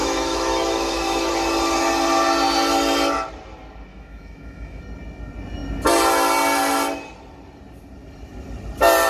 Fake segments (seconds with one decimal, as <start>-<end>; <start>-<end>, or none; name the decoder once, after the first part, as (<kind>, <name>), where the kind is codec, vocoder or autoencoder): 0.0-1.3 (autoencoder, DAC-VAE); 3.9-4.8

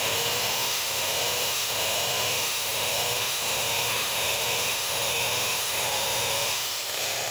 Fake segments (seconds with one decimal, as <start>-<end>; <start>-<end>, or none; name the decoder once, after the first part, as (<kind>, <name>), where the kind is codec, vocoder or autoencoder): 0.0-7.3 (autoencoder, DAC-VAE)

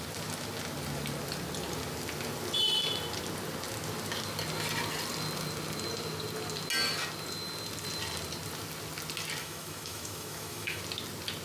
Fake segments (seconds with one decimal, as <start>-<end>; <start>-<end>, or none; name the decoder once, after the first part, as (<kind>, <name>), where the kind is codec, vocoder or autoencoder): 9.4-10.8 (autoencoder, DAC-VAE)